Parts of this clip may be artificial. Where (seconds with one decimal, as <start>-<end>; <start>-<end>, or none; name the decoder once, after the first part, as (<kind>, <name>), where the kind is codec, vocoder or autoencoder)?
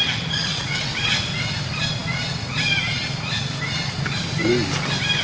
0.5-1.1 (vocoder, WaveNeXt)